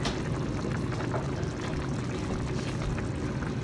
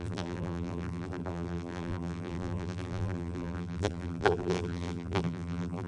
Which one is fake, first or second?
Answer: second